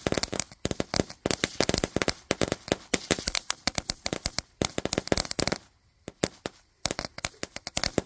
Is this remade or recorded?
recorded